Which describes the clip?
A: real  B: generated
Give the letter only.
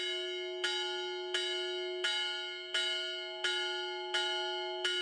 A